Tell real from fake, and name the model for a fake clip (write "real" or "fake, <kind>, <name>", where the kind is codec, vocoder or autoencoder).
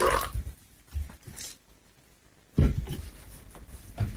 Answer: real